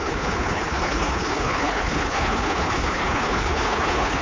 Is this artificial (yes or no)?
yes